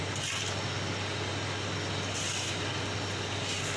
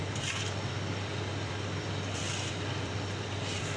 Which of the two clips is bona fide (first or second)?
first